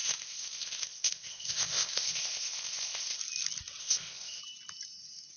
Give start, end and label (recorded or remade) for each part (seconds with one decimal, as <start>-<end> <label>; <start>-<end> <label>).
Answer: 0.0-3.2 remade; 3.2-3.8 recorded; 3.8-4.4 remade; 4.4-5.4 recorded

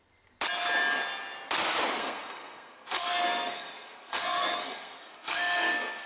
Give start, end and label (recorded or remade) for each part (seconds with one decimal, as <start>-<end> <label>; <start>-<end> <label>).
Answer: 0.0-2.0 recorded; 2.0-6.1 remade

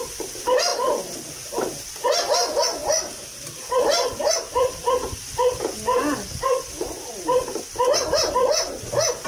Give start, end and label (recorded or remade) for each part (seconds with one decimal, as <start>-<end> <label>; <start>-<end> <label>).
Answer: 0.0-9.3 recorded

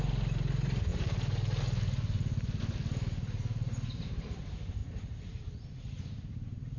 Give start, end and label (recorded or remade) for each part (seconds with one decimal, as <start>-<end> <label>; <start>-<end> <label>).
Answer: 0.0-4.8 recorded; 4.8-5.4 remade; 5.4-6.8 recorded

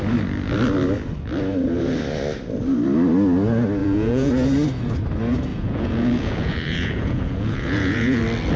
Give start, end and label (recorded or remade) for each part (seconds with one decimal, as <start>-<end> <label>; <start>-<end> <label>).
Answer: 0.0-3.8 recorded; 3.8-4.3 remade; 4.3-5.5 recorded; 5.5-8.2 remade; 8.2-8.6 recorded

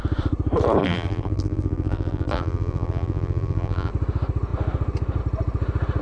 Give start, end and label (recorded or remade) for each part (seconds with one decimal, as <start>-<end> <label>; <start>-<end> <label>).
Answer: 0.0-0.8 recorded; 0.8-3.9 remade; 3.9-6.0 recorded